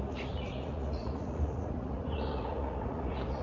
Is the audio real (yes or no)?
no